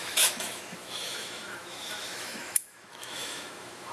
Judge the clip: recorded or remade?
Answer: remade